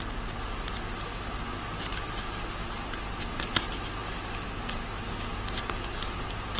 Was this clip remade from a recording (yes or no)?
no